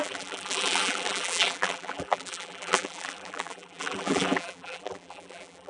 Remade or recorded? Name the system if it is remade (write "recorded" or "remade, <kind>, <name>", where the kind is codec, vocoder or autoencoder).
remade, vocoder, BigVGAN v2